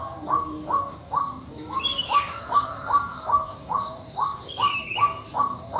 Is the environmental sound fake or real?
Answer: fake